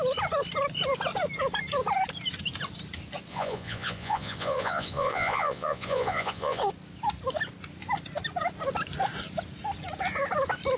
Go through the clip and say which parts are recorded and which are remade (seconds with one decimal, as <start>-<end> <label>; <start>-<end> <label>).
0.0-3.3 recorded; 3.3-6.6 remade; 6.6-10.8 recorded